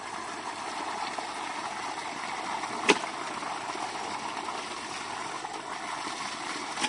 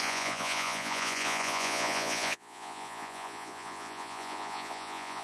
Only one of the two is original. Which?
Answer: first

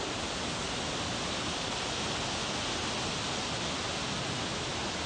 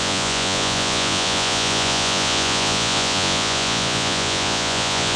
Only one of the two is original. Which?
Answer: first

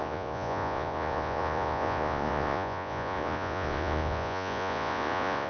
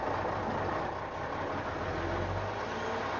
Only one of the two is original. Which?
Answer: second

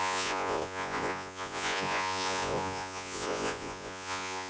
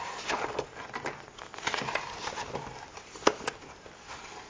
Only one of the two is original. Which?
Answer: second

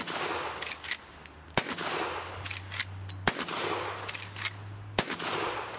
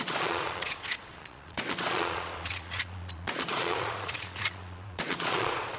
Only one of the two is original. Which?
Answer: first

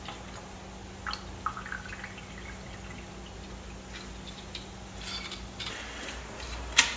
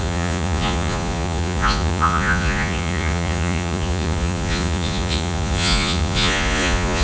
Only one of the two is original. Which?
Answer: first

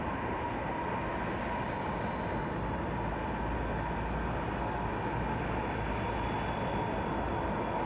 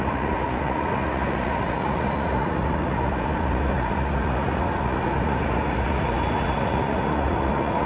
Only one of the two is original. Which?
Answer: first